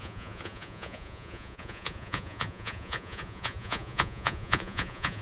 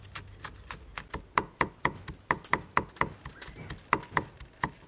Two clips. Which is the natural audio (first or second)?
second